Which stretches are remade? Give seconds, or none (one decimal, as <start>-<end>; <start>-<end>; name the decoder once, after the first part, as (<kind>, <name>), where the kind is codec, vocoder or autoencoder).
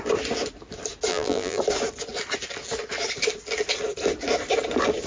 1.1-1.6 (vocoder, BigVGAN v2)